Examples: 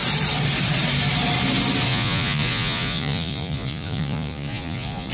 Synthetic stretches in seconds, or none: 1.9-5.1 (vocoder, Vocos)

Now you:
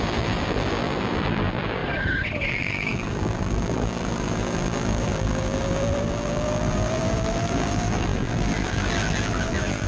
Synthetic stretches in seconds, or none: 0.0-1.8 (vocoder, BigVGAN v2); 2.5-9.9

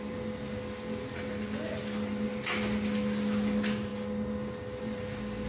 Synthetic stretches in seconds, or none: none

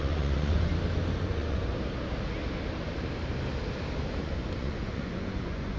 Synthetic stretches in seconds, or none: 0.0-0.7 (vocoder, Vocos); 1.2-1.6; 4.2-5.8

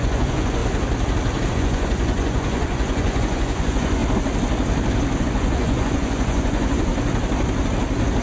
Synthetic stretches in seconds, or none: 0.0-0.6 (vocoder, Vocos); 1.5-4.0; 5.2-6.9